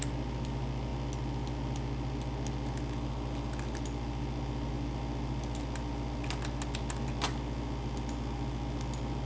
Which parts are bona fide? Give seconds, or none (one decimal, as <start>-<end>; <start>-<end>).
0.0-9.3